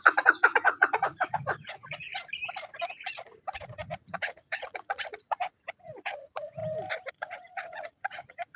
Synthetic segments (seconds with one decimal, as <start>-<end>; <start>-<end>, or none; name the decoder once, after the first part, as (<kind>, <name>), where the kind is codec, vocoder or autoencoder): 0.0-2.1 (vocoder, Vocos); 2.8-6.6; 7.1-8.6